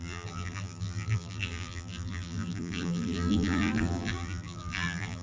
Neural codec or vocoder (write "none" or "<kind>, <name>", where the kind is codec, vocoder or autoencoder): vocoder, BigVGAN v2